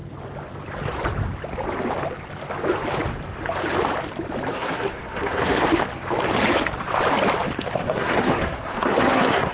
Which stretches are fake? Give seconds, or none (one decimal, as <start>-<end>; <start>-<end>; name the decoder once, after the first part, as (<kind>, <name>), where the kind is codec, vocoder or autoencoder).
4.5-5.8 (codec, SNAC); 7.7-9.5